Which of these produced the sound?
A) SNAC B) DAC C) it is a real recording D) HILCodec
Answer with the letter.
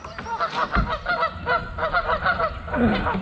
C